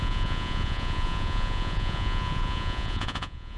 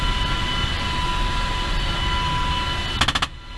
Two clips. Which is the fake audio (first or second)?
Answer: first